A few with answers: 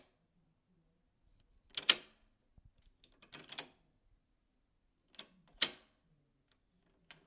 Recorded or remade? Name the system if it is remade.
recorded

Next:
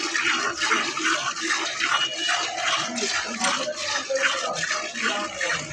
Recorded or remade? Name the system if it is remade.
recorded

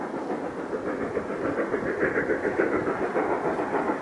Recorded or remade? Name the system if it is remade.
recorded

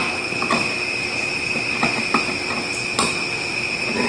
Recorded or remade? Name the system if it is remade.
recorded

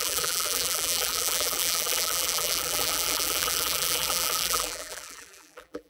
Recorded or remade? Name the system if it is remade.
remade, vocoder, BigVGAN v2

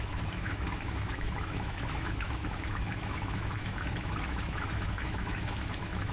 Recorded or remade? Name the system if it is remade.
remade, autoencoder, DAC-VAE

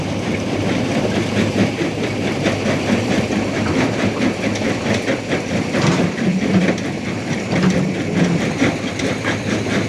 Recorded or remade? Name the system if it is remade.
remade, vocoder, BigVGAN v2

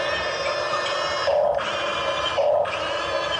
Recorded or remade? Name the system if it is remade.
recorded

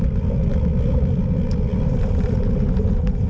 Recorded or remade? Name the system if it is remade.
recorded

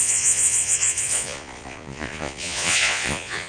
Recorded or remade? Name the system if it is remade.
remade, vocoder, Vocos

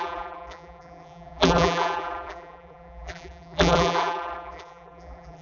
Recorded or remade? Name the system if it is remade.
remade, vocoder, BigVGAN v2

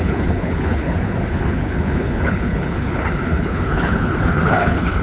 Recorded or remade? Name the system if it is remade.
remade, codec, HILCodec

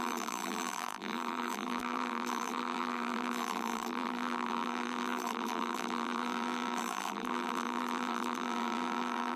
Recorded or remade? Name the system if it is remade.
remade, vocoder, BigVGAN v2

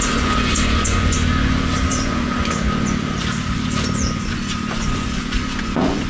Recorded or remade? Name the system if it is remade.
remade, vocoder, Vocos